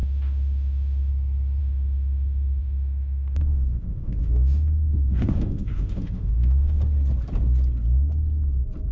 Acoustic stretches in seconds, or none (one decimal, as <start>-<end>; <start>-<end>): 1.1-1.6; 6.8-8.9